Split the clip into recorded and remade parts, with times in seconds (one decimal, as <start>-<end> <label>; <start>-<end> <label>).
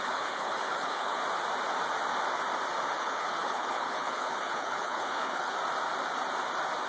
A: 0.0-1.2 remade; 1.2-3.0 recorded; 3.0-5.6 remade; 5.6-6.9 recorded